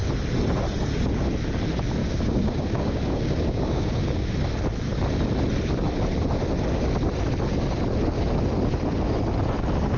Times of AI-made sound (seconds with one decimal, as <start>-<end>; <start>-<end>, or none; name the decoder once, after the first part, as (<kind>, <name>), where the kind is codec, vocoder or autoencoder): 2.0-4.3 (codec, DAC)